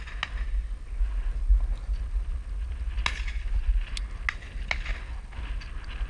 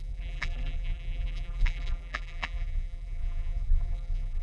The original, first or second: first